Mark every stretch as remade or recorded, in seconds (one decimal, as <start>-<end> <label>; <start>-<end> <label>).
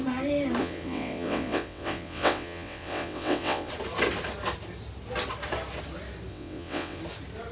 0.0-0.6 recorded; 0.6-3.7 remade; 3.7-6.3 recorded; 6.3-7.0 remade; 7.0-7.5 recorded